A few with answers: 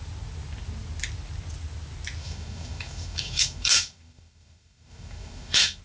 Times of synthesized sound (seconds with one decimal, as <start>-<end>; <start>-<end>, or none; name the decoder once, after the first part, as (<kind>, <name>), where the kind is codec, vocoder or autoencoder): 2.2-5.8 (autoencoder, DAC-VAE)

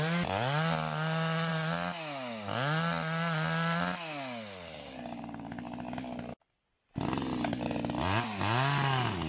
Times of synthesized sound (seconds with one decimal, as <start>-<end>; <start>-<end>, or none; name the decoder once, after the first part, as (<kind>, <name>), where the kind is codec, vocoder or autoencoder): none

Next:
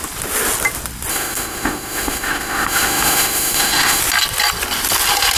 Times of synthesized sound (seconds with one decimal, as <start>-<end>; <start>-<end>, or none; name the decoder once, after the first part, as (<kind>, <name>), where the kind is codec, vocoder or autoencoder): 1.1-4.0 (autoencoder, DAC-VAE)

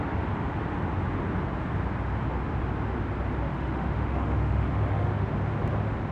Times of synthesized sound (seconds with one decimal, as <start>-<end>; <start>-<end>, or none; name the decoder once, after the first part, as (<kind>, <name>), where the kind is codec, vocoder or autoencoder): 3.5-5.3 (autoencoder, DAC-VAE)

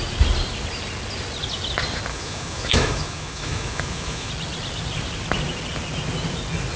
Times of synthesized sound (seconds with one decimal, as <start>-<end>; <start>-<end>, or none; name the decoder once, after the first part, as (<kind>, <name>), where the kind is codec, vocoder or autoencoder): 2.1-4.3 (autoencoder, DAC-VAE)